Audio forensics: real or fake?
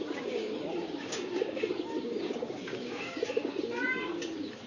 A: fake